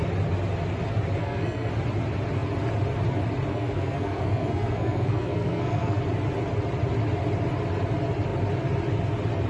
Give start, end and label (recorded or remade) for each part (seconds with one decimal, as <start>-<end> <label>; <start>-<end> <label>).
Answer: 0.0-1.2 recorded; 1.2-1.7 remade; 1.7-3.5 recorded; 3.5-6.0 remade; 6.0-9.5 recorded

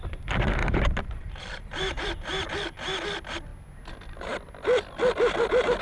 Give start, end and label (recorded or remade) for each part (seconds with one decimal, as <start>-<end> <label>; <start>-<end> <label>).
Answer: 0.0-0.6 recorded; 0.6-2.1 remade; 2.1-5.8 recorded

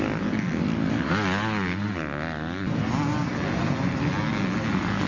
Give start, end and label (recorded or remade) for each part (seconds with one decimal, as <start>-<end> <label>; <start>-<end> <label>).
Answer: 0.0-5.1 recorded

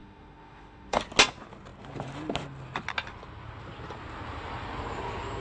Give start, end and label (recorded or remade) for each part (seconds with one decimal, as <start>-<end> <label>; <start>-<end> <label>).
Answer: 0.0-1.0 remade; 1.0-5.4 recorded

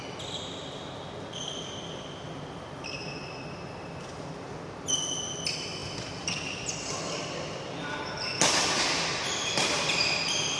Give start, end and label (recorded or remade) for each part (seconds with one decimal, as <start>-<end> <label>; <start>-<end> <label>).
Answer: 0.0-10.6 recorded